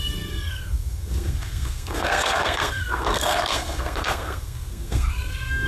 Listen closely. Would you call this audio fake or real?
fake